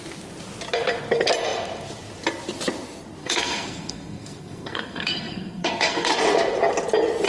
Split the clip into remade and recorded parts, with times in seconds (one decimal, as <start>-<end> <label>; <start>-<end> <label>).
0.0-3.2 recorded; 3.2-6.1 remade; 6.1-7.3 recorded

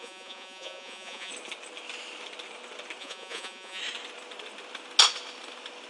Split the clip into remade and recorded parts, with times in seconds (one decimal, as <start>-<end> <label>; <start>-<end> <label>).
0.0-1.3 remade; 1.3-3.0 recorded; 3.0-3.8 remade; 3.8-5.9 recorded

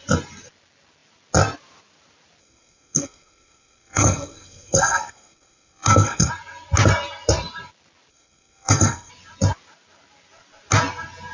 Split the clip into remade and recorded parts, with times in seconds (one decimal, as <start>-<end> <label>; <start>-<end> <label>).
0.0-2.4 recorded; 2.4-6.3 remade; 6.3-8.1 recorded; 8.1-9.1 remade; 9.1-11.3 recorded

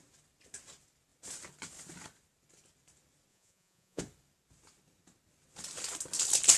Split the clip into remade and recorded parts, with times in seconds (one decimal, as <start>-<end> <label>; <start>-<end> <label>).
0.0-3.3 recorded; 3.3-4.0 remade; 4.0-6.6 recorded

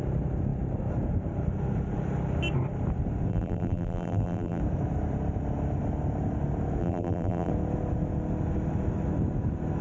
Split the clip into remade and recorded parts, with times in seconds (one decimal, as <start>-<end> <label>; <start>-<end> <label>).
0.0-3.3 recorded; 3.3-4.6 remade; 4.6-6.8 recorded; 6.8-7.5 remade; 7.5-9.8 recorded

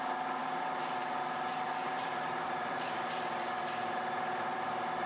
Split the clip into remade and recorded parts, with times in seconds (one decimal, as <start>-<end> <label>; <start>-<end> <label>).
0.0-0.4 recorded; 0.4-1.2 remade; 1.2-1.8 recorded; 1.8-5.1 remade

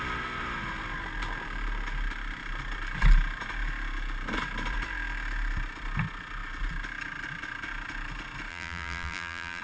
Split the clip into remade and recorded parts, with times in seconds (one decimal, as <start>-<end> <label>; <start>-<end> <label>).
0.0-8.5 recorded; 8.5-9.6 remade